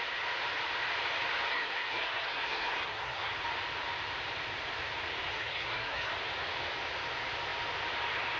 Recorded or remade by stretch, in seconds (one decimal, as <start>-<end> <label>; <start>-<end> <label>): 0.0-1.5 recorded; 1.5-3.3 remade; 3.3-5.3 recorded; 5.3-6.1 remade; 6.1-8.4 recorded